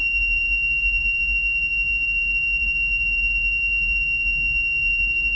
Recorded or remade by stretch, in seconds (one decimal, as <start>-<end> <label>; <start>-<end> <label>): 0.0-5.4 remade